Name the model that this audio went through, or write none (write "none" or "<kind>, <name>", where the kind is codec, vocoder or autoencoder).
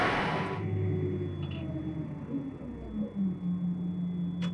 none